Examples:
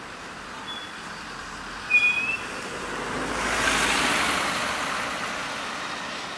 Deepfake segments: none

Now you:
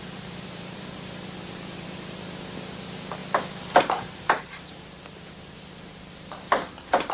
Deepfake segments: 0.0-3.2 (vocoder, BigVGAN v2); 3.8-7.1

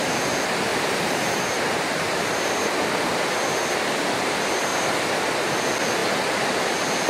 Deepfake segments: 0.7-2.9 (vocoder, BigVGAN v2); 4.7-5.2

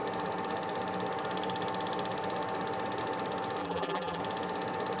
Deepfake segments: 3.6-4.2 (vocoder, BigVGAN v2)

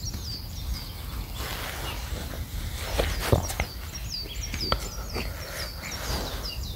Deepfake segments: none

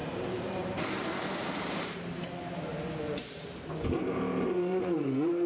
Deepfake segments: 0.0-5.5 (vocoder, BigVGAN v2)